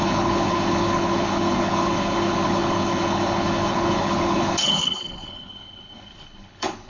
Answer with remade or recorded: remade